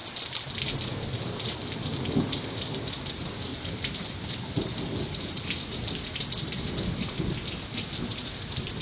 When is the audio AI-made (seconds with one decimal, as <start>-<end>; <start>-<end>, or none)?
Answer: 3.5-4.3

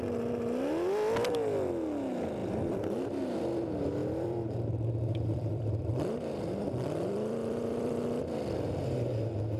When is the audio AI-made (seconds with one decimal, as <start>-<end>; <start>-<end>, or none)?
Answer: 2.4-3.6; 4.0-8.2